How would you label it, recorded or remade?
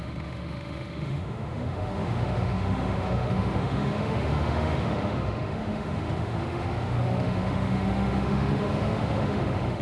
remade